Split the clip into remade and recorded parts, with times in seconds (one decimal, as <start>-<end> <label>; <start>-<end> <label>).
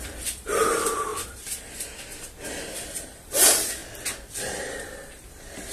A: 0.0-3.8 remade; 3.8-4.5 recorded; 4.5-5.7 remade